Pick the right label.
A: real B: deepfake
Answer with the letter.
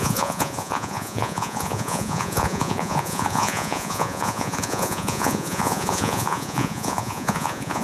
B